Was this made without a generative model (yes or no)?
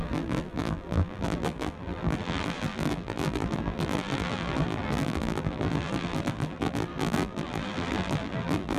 no